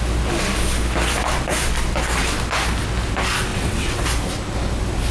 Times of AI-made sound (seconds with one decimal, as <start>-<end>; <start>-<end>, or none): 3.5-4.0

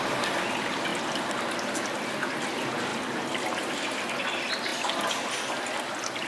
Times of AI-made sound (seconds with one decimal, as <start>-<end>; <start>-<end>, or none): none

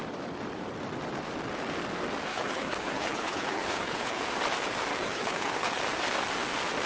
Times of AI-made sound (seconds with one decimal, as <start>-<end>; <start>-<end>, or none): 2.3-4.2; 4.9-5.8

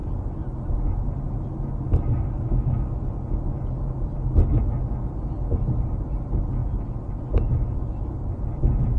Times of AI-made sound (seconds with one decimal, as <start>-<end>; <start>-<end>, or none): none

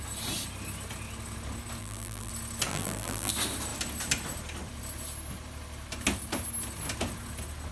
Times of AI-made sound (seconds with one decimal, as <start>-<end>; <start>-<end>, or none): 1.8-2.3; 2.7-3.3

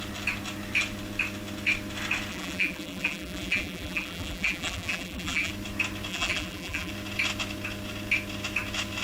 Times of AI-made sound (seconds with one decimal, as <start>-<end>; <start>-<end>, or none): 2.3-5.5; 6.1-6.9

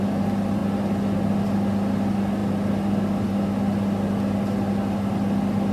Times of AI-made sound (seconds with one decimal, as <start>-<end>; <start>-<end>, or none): none